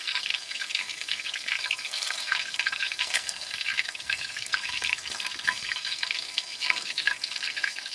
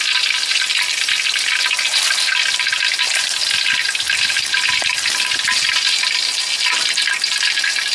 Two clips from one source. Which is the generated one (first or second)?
first